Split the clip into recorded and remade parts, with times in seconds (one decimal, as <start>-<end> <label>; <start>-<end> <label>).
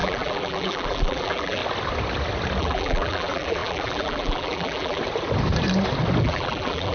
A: 0.0-1.6 remade; 1.6-2.6 recorded; 2.6-5.0 remade; 5.0-6.2 recorded; 6.2-6.9 remade